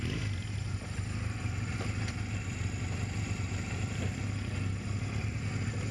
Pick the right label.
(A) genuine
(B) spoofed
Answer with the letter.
A